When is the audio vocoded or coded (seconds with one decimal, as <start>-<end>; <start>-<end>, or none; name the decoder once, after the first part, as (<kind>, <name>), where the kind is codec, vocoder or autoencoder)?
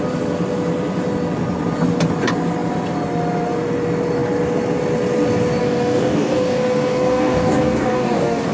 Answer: 5.6-8.5 (codec, DAC)